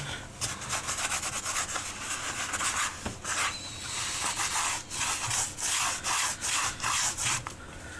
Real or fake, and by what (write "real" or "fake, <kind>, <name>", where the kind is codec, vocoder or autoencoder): real